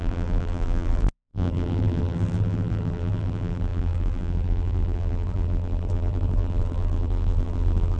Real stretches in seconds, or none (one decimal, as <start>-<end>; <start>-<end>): none